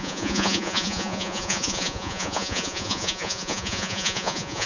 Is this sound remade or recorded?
remade